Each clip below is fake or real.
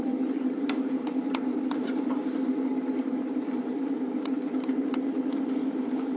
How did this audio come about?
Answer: fake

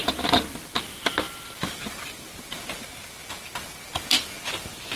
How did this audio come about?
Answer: real